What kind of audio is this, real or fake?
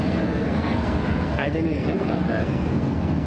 fake